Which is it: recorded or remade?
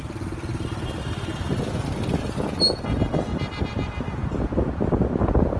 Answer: recorded